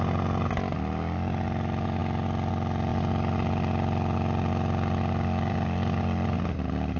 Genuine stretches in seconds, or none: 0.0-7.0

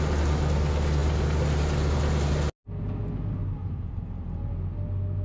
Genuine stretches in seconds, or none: 0.0-3.6; 4.5-5.2

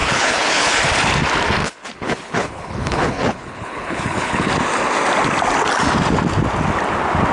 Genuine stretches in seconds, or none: 0.8-1.6; 4.5-7.3

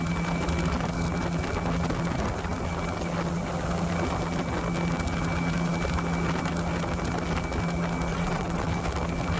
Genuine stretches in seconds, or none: 0.0-8.1; 8.7-9.4

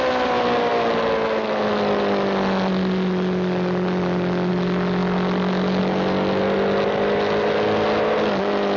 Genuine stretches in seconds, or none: 0.0-8.8

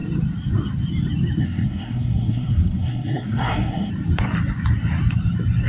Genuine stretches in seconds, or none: 0.0-1.4; 3.9-5.7

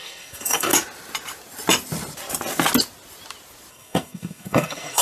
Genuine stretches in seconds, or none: 0.7-3.7